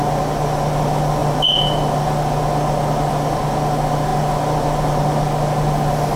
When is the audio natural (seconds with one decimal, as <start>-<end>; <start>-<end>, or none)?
0.0-6.2

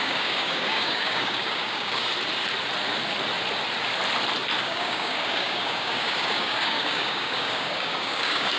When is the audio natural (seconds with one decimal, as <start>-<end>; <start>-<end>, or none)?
2.1-4.6

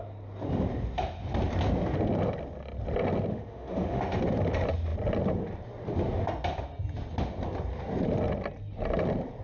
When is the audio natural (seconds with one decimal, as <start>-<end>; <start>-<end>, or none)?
0.0-3.3; 4.0-9.4

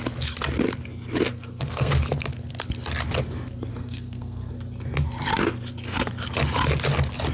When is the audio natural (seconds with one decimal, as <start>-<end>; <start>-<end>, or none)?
0.0-1.3; 1.9-3.7; 4.5-7.3